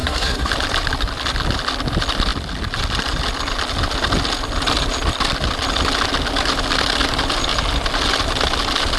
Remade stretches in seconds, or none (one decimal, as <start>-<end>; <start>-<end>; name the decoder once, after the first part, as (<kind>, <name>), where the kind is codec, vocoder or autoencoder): 0.0-0.5 (codec, SNAC)